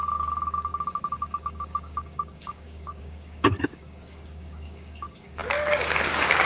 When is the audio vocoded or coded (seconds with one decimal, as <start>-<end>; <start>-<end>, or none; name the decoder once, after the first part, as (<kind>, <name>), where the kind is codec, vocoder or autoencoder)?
0.0-6.5 (codec, DAC)